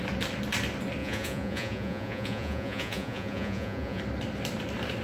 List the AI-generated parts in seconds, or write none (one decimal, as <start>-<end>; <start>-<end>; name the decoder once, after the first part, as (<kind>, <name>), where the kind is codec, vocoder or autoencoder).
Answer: 1.0-4.0 (vocoder, Vocos)